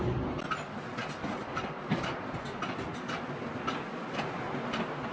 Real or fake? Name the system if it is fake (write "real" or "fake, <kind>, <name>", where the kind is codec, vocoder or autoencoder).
real